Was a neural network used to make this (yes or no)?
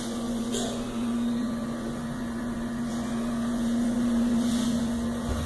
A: yes